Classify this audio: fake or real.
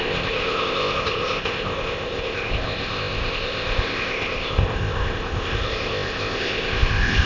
fake